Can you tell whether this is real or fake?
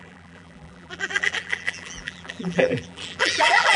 fake